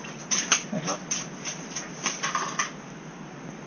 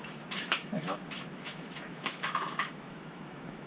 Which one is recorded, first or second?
first